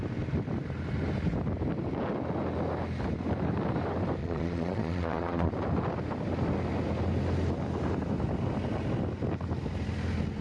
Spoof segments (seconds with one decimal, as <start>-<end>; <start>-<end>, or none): 4.2-5.5